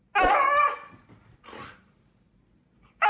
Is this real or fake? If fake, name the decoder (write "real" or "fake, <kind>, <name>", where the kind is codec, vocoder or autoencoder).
real